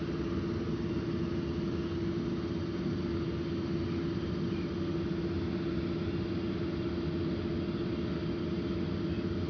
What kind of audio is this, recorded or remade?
recorded